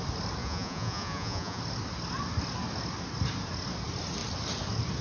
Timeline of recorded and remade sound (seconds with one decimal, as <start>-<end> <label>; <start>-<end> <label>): 0.0-0.4 recorded; 0.4-1.6 remade; 1.6-5.0 recorded